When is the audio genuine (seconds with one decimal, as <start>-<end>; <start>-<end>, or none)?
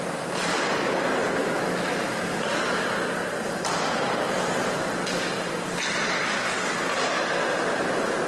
0.0-1.4; 2.4-8.3